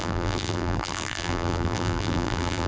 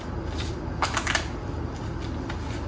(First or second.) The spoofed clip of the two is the first